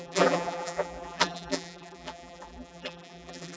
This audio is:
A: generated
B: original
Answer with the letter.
A